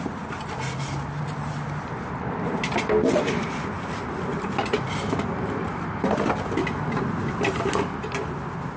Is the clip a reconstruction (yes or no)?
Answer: no